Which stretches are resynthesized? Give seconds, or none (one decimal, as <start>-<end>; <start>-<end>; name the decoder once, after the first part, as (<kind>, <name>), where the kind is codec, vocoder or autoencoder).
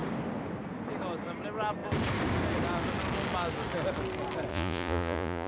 4.5-5.5 (vocoder, Vocos)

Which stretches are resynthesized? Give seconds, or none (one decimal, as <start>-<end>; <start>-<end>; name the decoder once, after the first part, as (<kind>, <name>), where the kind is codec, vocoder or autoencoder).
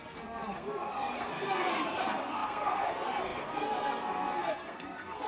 0.0-5.3 (codec, SNAC)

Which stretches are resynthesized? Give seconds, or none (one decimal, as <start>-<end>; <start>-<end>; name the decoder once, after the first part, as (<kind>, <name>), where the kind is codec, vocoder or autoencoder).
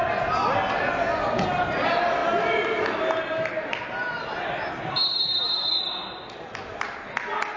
none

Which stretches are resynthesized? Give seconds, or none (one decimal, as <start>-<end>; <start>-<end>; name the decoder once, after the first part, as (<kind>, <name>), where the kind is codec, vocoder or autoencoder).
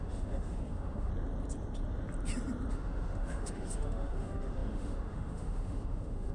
0.0-1.1 (autoencoder, DAC-VAE); 2.7-6.3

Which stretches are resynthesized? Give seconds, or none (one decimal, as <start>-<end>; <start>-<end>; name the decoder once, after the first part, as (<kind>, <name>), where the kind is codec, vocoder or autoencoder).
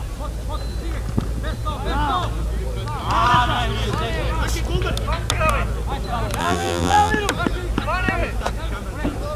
6.4-7.1 (vocoder, BigVGAN v2)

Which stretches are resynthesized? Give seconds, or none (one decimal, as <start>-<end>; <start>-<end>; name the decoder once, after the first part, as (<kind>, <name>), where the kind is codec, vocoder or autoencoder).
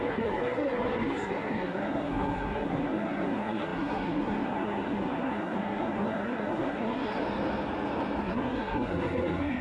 0.0-7.2 (codec, SNAC); 8.2-9.6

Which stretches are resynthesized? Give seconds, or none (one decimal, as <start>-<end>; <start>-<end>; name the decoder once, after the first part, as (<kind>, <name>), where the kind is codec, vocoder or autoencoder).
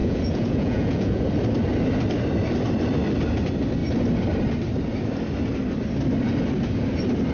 0.0-1.2 (vocoder, Vocos)